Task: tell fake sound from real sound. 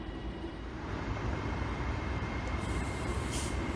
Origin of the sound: fake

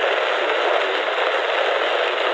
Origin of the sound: real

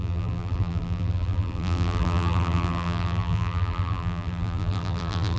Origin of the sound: fake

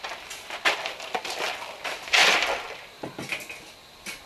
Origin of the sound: real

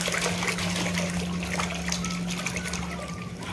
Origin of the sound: real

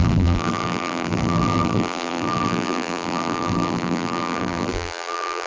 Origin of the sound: fake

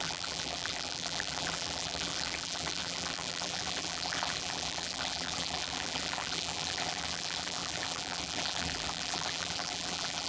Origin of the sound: fake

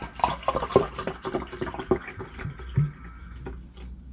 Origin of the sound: real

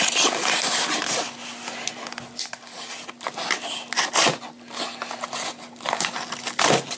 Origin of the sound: real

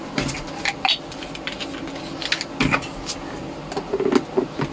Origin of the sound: real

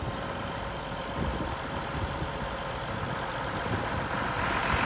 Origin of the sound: real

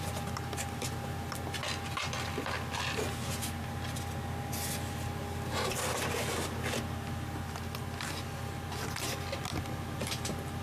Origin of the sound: real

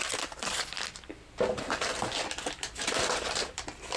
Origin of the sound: fake